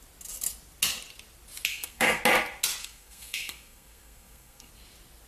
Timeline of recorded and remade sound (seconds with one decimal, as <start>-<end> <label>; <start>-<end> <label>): 0.0-1.7 recorded; 1.7-2.2 remade; 2.2-2.8 recorded; 2.8-4.7 remade; 4.7-5.3 recorded